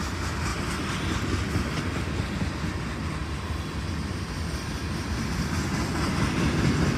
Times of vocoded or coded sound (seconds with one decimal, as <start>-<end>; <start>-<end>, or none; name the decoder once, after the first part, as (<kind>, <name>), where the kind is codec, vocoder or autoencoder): none